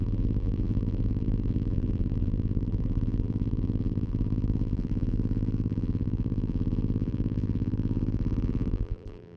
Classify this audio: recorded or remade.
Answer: remade